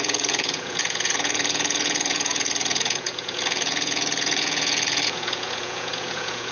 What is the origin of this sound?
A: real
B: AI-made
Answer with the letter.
B